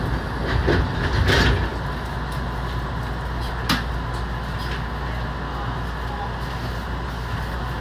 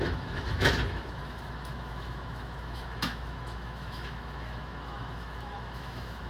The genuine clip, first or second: first